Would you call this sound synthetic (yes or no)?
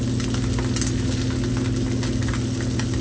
no